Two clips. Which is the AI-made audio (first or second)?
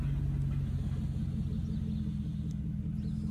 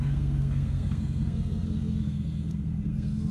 second